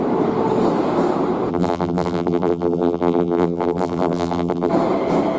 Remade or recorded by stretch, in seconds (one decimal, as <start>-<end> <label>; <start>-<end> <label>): 0.0-1.5 recorded; 1.5-4.7 remade; 4.7-5.4 recorded